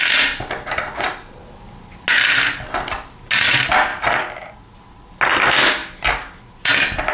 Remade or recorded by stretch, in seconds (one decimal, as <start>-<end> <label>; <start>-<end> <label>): 0.0-3.9 recorded; 3.9-4.5 remade; 4.5-7.1 recorded